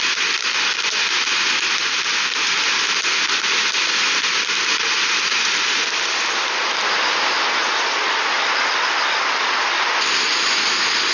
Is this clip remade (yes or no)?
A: no